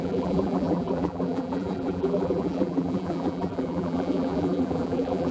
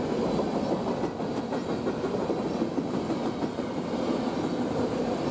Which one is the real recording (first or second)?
second